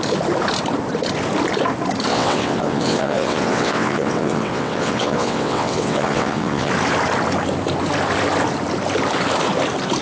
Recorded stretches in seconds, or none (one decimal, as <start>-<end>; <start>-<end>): 0.0-2.1; 6.7-10.0